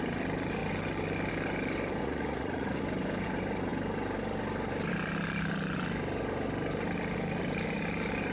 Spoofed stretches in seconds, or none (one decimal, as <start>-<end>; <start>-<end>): 2.0-2.8